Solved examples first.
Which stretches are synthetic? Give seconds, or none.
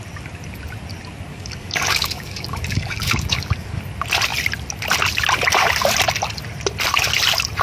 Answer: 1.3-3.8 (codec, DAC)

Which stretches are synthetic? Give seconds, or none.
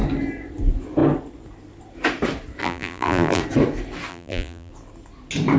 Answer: 2.6-3.4 (vocoder, BigVGAN v2); 4.1-4.7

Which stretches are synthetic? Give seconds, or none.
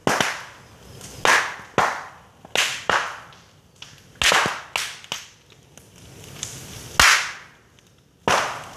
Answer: 2.7-3.6 (vocoder, BigVGAN v2)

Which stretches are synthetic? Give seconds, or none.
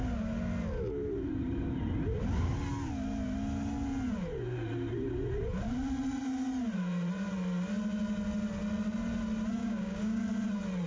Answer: 9.6-10.2 (codec, DAC)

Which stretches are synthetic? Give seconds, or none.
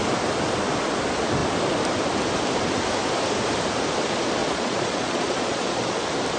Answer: 4.4-6.0 (vocoder, Vocos)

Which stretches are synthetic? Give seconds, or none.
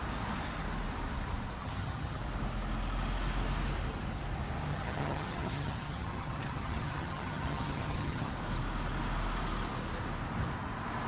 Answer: 1.6-2.2 (vocoder, HiFi-GAN); 4.7-8.3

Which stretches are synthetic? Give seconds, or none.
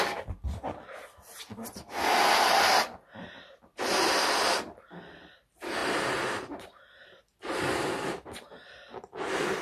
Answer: none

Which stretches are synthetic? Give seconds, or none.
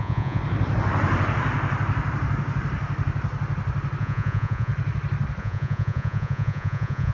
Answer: 0.0-0.4 (vocoder, Vocos); 4.0-4.7; 5.4-7.1